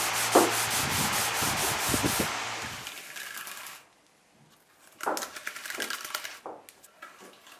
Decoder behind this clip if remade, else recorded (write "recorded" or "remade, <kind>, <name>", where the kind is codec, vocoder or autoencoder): recorded